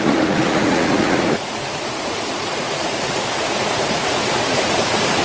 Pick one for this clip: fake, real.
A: fake